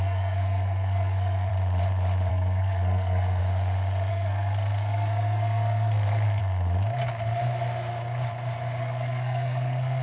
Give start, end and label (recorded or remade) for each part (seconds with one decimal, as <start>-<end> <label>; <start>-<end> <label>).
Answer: 0.0-1.5 remade; 1.5-2.3 recorded; 2.3-3.4 remade; 3.4-4.1 recorded; 4.1-6.4 remade; 6.4-8.8 recorded; 8.8-10.0 remade